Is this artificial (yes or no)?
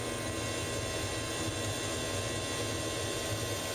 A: no